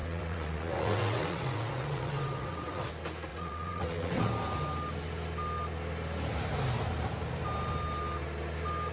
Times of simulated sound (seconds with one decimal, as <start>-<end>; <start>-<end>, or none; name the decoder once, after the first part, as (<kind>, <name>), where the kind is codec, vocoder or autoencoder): 0.0-2.9 (vocoder, WaveNeXt); 3.3-4.3

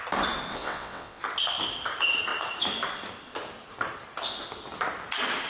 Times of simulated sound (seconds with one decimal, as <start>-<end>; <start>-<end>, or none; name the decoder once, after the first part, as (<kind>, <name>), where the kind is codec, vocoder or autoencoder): 0.5-1.2 (vocoder, WaveNeXt)

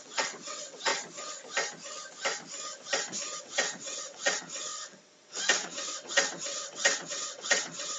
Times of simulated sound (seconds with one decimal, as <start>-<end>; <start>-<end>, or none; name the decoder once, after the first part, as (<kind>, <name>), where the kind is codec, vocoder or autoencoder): 0.0-0.9 (vocoder, WaveNeXt); 3.4-8.0